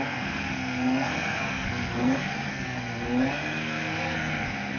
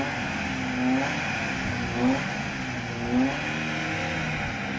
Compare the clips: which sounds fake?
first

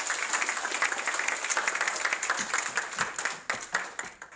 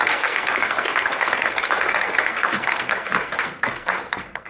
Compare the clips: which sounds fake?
second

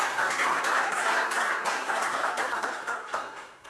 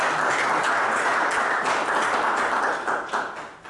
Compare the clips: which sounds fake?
first